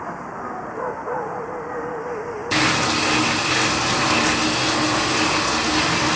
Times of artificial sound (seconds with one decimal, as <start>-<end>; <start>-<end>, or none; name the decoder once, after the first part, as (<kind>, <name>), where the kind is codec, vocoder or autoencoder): none